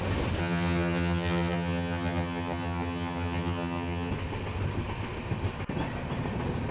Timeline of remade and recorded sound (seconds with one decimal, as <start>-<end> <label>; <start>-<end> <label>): 0.0-0.4 recorded; 0.4-4.1 remade; 4.1-6.7 recorded

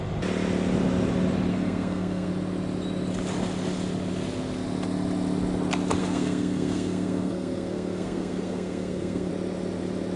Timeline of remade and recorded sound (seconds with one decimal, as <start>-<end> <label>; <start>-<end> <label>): 0.0-1.5 recorded; 1.5-2.3 remade; 2.3-6.0 recorded; 6.0-9.3 remade; 9.3-10.2 recorded

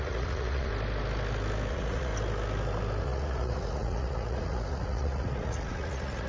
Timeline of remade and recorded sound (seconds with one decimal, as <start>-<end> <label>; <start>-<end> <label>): 0.0-0.7 remade; 0.7-1.7 recorded; 1.7-2.1 remade; 2.1-3.0 recorded; 3.0-6.3 remade

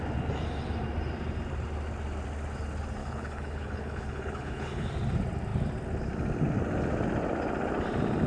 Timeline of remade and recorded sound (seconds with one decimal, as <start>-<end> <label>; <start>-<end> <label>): 0.0-3.0 recorded; 3.0-4.9 remade; 4.9-8.3 recorded

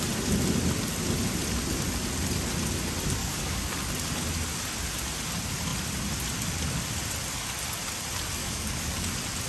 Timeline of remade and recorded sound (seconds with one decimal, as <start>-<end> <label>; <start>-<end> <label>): 0.0-3.2 recorded; 3.2-3.9 remade; 3.9-8.4 recorded; 8.4-9.1 remade; 9.1-9.5 recorded

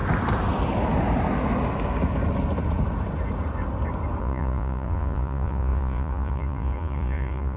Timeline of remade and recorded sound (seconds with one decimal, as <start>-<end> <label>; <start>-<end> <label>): 0.0-4.2 recorded; 4.2-7.6 remade